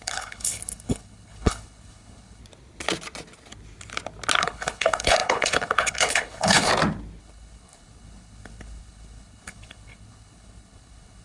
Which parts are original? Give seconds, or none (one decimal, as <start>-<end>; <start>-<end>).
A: 2.4-4.4; 6.7-7.2